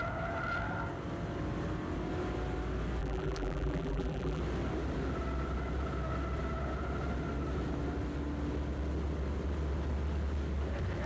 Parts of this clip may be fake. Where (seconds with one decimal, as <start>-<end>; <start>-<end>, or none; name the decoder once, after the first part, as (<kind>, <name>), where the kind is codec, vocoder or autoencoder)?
3.0-4.4 (vocoder, BigVGAN v2)